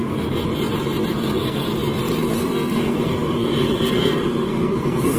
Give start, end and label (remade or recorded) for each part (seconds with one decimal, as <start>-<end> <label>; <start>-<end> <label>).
0.0-0.4 remade; 0.4-1.1 recorded; 1.1-1.7 remade; 1.7-2.4 recorded; 2.4-5.2 remade